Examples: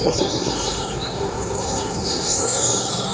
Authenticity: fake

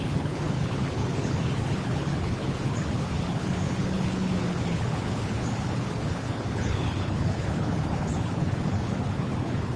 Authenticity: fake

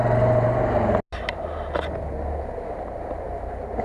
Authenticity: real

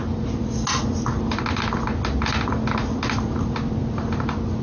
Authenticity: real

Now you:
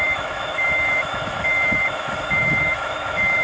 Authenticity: fake